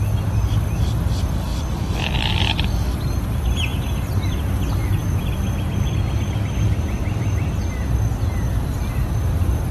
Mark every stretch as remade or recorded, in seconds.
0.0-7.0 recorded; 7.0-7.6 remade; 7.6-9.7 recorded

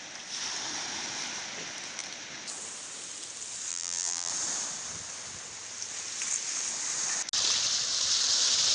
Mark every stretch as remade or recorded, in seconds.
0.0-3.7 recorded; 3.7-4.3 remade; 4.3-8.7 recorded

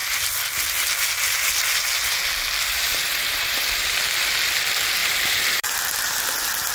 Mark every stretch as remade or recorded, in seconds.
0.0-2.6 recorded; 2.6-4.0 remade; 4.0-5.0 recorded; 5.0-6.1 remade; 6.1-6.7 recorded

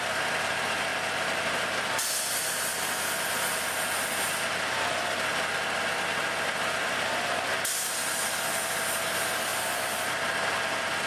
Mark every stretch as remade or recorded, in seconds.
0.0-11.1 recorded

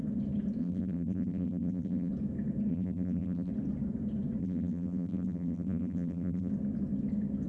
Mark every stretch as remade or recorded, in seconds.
0.0-0.6 recorded; 0.6-2.1 remade; 2.1-2.7 recorded; 2.7-3.5 remade; 3.5-4.4 recorded; 4.4-6.5 remade; 6.5-7.5 recorded